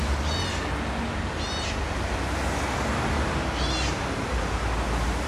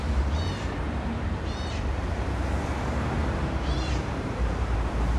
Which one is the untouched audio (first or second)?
first